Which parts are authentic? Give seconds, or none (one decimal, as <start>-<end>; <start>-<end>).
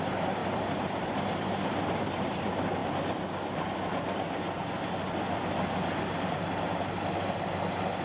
0.0-0.4; 2.4-8.0